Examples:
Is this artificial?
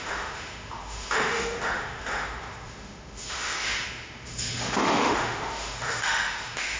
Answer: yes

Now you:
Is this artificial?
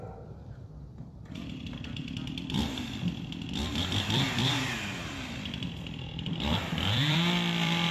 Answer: yes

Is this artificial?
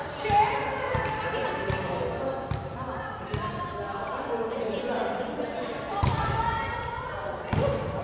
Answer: no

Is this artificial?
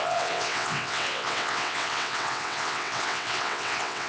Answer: yes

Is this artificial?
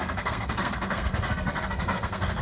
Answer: yes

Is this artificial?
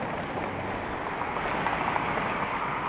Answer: no